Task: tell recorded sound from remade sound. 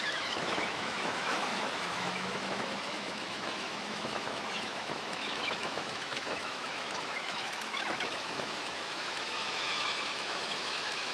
remade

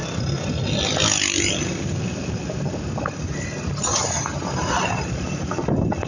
recorded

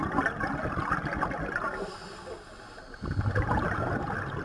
recorded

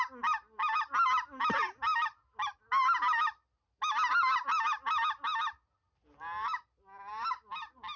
recorded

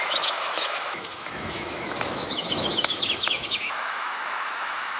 remade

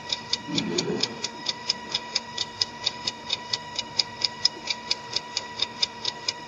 remade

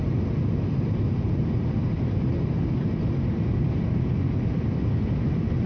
recorded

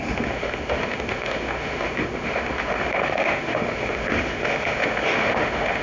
remade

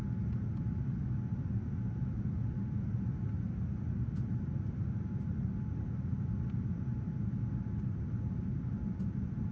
recorded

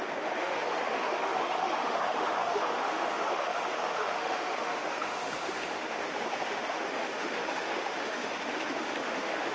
remade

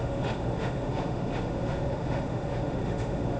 remade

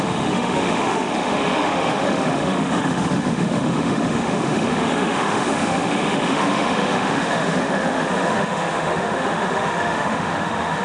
remade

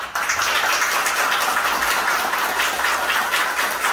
recorded